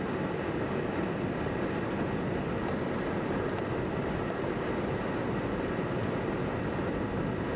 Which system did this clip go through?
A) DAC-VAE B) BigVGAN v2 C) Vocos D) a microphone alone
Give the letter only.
D